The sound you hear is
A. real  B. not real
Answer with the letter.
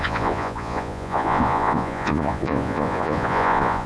B